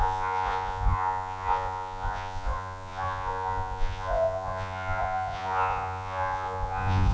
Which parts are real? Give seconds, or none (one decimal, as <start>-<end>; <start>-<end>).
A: none